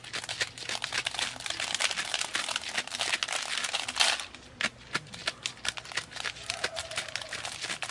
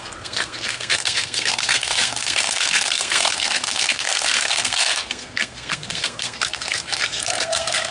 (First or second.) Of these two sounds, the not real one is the second